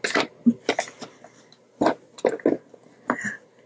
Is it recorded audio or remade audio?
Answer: recorded